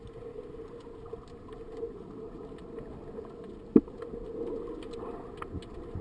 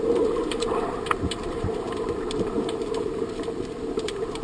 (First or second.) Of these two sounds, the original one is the first